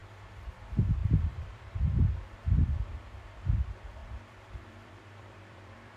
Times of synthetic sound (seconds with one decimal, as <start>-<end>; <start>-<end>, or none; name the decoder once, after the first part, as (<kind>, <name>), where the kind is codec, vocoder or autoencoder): 0.0-0.6 (vocoder, BigVGAN v2); 1.0-1.8; 4.0-6.0